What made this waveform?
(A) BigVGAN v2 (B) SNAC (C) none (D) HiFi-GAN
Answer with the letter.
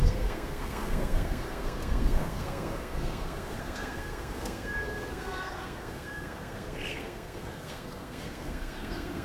B